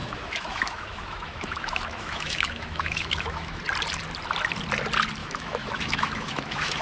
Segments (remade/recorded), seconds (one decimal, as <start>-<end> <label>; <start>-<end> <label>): 0.0-3.6 remade; 3.6-5.2 recorded; 5.2-6.8 remade